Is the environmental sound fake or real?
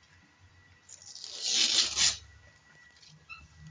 real